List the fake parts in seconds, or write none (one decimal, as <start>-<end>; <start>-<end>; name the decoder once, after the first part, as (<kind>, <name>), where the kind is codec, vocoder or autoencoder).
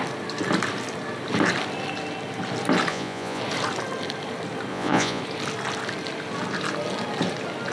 2.9-3.4 (vocoder, Vocos); 4.7-5.2